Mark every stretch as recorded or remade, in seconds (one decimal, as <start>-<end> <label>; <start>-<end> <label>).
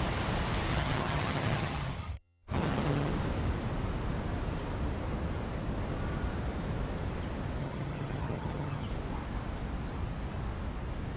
0.0-0.7 recorded; 0.7-3.1 remade; 3.1-7.6 recorded; 7.6-8.9 remade; 8.9-11.2 recorded